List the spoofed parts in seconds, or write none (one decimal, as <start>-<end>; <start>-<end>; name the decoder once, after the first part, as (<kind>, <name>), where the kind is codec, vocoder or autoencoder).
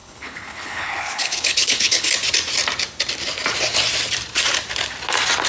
0.0-2.1 (codec, HILCodec)